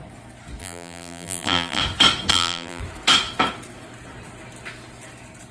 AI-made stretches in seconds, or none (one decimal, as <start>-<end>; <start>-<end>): 0.6-1.8; 2.3-2.8